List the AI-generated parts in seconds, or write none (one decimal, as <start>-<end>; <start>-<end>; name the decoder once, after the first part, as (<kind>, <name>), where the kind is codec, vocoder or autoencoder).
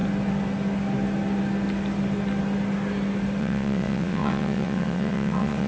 3.4-5.7 (vocoder, WaveNeXt)